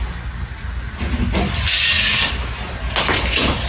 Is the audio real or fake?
real